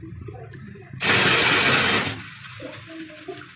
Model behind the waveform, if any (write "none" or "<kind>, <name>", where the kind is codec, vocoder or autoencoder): none